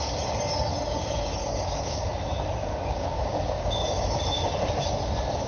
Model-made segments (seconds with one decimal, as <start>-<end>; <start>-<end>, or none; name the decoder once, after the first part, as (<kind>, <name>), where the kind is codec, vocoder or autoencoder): 0.7-2.1 (codec, DAC); 2.6-4.2